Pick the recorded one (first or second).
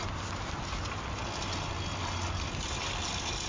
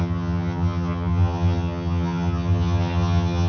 first